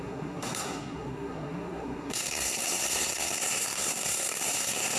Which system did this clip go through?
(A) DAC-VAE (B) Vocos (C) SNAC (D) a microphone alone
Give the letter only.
C